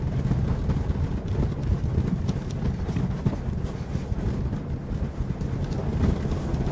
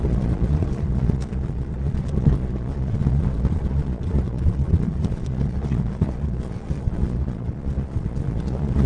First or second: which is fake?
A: second